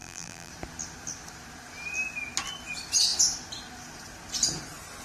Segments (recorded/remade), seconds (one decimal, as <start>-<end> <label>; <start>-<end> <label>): 0.0-0.5 remade; 0.5-5.0 recorded